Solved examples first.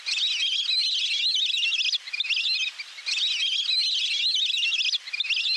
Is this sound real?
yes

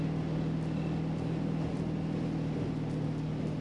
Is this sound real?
yes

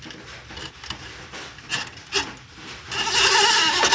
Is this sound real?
yes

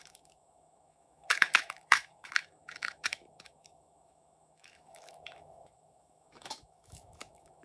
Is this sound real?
no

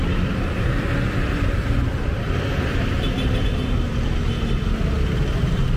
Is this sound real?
no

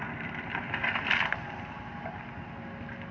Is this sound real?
yes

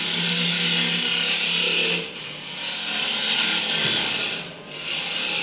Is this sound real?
yes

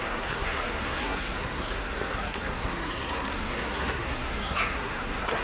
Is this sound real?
no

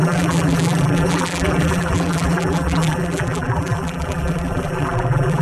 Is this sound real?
no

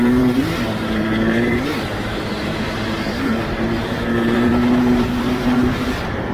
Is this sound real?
no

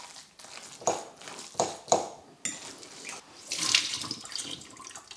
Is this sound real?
yes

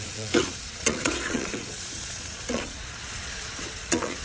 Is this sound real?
no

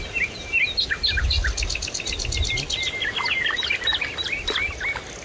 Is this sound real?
yes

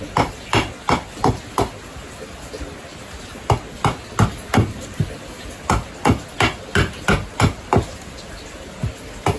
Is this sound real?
yes